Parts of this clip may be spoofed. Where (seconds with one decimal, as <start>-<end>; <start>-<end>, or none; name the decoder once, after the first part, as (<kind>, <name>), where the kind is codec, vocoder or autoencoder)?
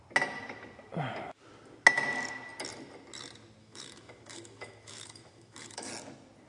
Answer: 3.6-5.9 (autoencoder, DAC-VAE)